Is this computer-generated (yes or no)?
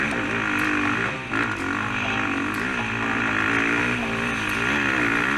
no